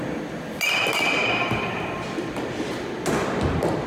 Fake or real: real